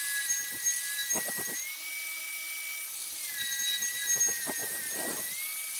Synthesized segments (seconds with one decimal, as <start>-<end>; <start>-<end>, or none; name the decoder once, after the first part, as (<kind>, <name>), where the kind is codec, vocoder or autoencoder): none